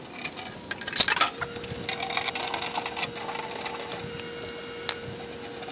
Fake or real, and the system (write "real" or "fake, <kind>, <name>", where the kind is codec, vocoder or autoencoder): real